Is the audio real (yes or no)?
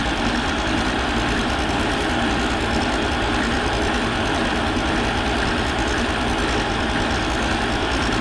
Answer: yes